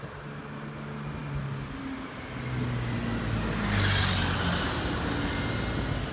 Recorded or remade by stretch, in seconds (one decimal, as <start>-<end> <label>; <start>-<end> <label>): 0.0-6.1 recorded